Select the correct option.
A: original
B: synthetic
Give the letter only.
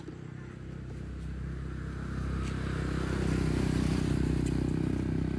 A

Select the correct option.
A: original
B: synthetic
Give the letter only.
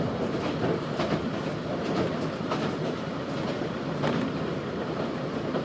B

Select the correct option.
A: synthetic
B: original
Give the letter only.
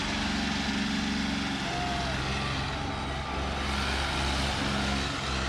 B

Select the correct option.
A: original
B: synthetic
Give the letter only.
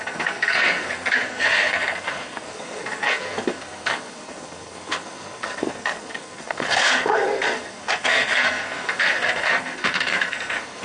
B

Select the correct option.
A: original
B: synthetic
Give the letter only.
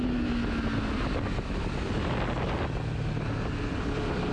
A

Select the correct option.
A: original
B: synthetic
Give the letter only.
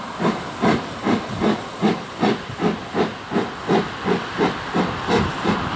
A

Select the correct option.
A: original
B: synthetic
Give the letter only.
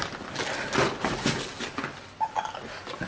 A